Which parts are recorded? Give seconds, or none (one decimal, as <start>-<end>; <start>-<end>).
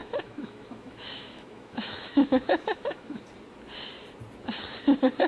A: 3.2-5.3